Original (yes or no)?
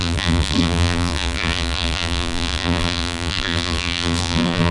no